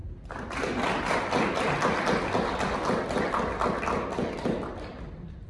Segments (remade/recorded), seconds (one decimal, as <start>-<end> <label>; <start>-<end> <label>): 0.0-5.5 recorded